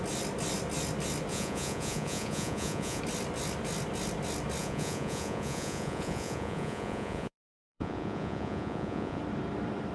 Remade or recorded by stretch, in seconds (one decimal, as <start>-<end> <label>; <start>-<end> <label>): 0.0-1.3 recorded; 1.3-3.0 remade; 3.0-4.6 recorded; 4.6-9.2 remade; 9.2-9.9 recorded

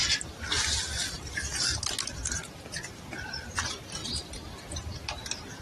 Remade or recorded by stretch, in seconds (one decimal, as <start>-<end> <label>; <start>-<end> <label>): 0.0-5.6 remade

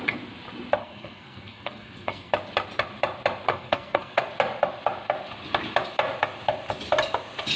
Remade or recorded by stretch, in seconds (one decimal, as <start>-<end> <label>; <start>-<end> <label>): 0.0-0.8 recorded; 0.8-2.3 remade; 2.3-3.5 recorded; 3.5-4.2 remade; 4.2-7.6 recorded

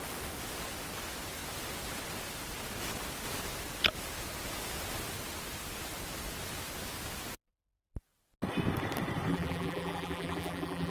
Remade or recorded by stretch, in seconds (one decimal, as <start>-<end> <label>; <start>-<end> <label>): 0.0-9.3 recorded; 9.3-10.9 remade

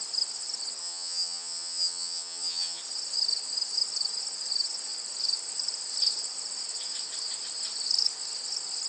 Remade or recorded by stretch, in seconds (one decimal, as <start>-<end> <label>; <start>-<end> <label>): 0.0-0.8 recorded; 0.8-2.8 remade; 2.8-8.9 recorded

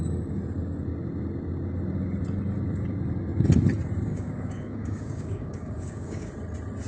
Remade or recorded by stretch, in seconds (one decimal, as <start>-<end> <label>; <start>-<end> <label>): 0.0-4.1 recorded; 4.1-6.3 remade; 6.3-6.9 recorded

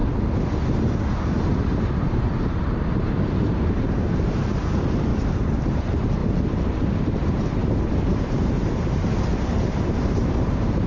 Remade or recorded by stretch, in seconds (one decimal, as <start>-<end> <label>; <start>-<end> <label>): 0.0-1.3 recorded; 1.3-5.1 remade; 5.1-5.7 recorded; 5.7-6.2 remade; 6.2-7.0 recorded; 7.0-7.6 remade; 7.6-8.1 recorded; 8.1-10.9 remade

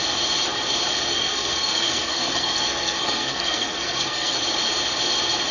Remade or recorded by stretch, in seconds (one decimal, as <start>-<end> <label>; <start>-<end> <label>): 0.0-1.1 recorded; 1.1-4.4 remade; 4.4-5.5 recorded